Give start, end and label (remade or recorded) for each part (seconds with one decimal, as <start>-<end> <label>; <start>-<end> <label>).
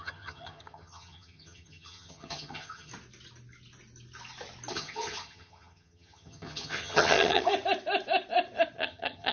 0.0-2.9 remade; 2.9-4.7 recorded; 4.7-7.5 remade; 7.5-8.8 recorded; 8.8-9.3 remade